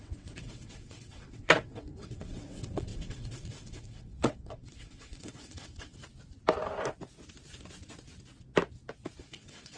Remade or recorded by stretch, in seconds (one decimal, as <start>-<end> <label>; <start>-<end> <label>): 0.0-6.0 remade; 6.0-9.2 recorded; 9.2-9.8 remade